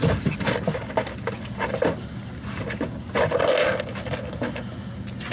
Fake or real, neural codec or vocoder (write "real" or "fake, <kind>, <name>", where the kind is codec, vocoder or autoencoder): real